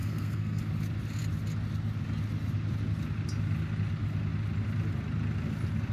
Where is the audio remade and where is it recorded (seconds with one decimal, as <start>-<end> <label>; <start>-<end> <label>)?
0.0-0.6 remade; 0.6-5.9 recorded